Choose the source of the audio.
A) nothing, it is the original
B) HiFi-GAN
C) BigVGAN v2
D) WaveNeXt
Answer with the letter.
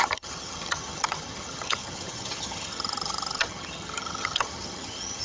B